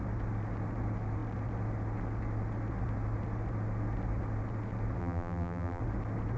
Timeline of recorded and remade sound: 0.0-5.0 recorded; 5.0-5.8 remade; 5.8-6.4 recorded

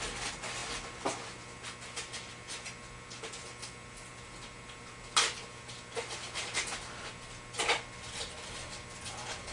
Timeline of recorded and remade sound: 0.0-9.5 recorded

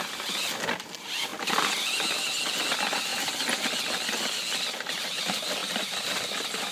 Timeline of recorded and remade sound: 0.0-1.3 recorded; 1.3-1.8 remade; 1.8-5.6 recorded; 5.6-6.2 remade; 6.2-6.7 recorded